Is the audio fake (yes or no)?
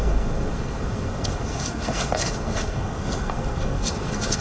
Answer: yes